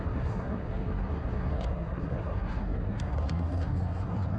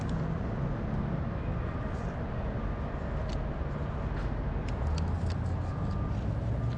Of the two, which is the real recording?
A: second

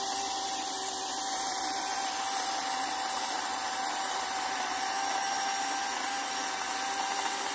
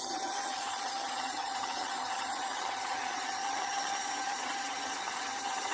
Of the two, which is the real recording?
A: first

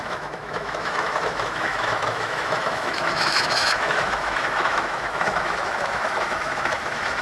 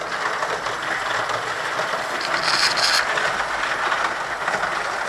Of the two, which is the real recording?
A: second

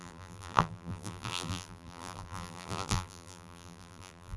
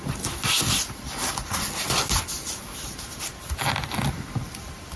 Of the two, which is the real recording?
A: second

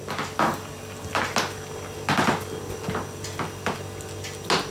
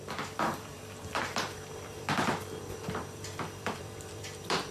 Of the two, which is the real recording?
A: first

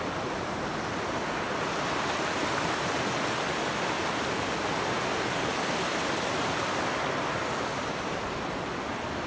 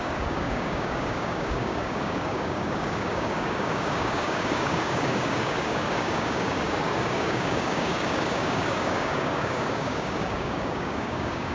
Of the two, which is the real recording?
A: first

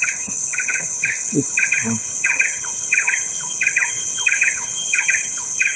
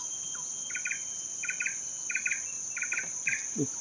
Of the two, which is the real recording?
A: second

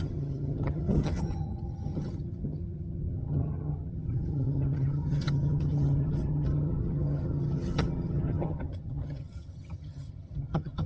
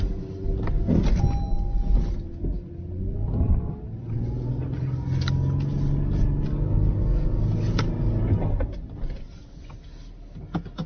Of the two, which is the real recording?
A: second